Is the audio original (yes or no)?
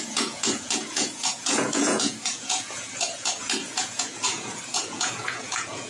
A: no